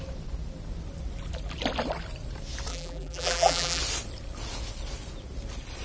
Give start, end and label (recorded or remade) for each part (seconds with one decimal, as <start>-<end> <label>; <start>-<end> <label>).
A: 0.0-2.7 recorded; 2.7-3.8 remade; 3.8-5.8 recorded